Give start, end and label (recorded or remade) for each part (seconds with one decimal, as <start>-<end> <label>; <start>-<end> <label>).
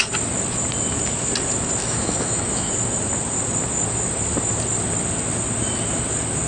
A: 0.0-1.8 recorded; 1.8-2.7 remade; 2.7-6.5 recorded